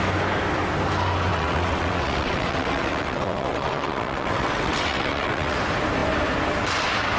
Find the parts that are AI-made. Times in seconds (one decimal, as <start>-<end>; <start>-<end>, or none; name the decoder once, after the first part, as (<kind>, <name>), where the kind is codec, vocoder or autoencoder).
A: 1.3-5.6 (vocoder, WaveNeXt)